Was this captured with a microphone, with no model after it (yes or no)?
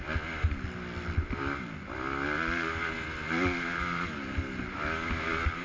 yes